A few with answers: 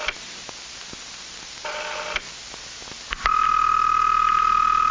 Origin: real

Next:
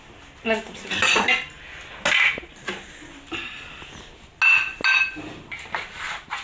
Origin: real